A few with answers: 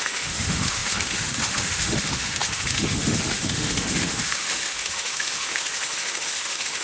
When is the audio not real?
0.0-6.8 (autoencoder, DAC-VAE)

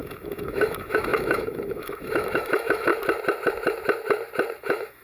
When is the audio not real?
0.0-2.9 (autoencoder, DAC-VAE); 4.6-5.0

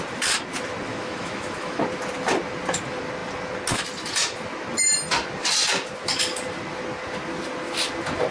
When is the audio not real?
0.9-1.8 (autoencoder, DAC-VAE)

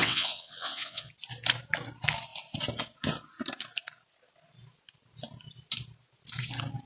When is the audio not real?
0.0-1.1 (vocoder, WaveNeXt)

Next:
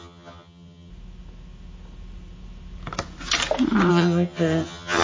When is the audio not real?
0.0-0.9 (vocoder, HiFi-GAN); 3.9-5.0